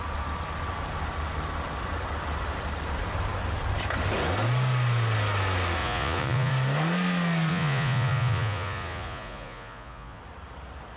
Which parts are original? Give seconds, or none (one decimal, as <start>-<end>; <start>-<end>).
0.0-5.8; 6.5-7.5; 10.2-11.0